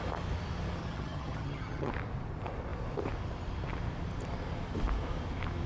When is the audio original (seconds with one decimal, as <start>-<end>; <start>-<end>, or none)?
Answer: 0.0-0.8; 1.9-5.7